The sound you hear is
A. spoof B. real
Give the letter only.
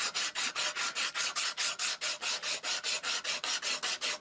B